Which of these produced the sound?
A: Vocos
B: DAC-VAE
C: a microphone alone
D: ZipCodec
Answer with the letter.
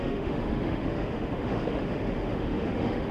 B